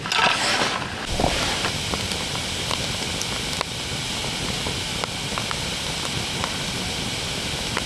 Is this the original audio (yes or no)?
yes